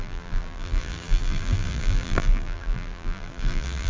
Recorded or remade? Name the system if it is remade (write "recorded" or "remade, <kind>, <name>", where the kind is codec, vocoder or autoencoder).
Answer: remade, vocoder, BigVGAN v2